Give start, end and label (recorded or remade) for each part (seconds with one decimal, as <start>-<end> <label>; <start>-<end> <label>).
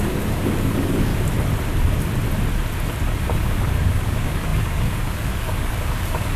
0.0-1.1 remade; 1.1-3.1 recorded; 3.1-6.4 remade